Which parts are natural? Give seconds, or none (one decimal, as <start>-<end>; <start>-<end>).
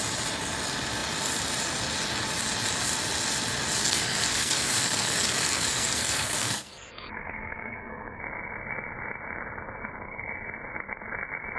0.0-3.8; 8.2-11.6